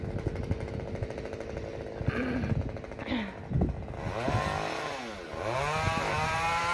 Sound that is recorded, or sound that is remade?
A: recorded